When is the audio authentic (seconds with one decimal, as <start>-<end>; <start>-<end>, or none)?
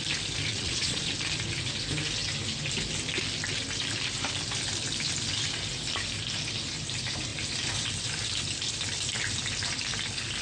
0.0-0.5; 1.1-10.4